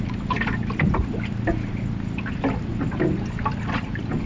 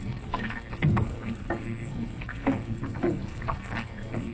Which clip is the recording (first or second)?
first